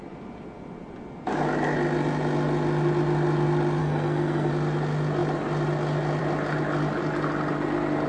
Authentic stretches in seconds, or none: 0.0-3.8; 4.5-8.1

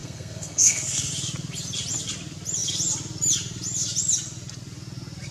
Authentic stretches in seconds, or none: 1.1-5.3